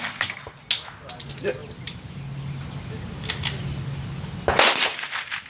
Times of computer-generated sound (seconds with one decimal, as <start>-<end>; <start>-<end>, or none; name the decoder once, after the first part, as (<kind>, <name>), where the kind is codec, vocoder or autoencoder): none